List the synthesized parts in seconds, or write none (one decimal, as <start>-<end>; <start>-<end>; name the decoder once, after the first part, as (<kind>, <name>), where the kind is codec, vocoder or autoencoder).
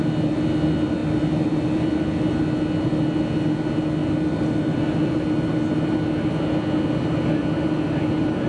1.0-2.3 (vocoder, BigVGAN v2); 4.0-4.6